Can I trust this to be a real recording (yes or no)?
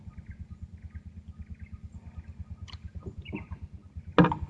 yes